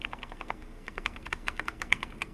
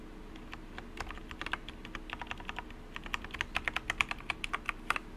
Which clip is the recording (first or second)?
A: second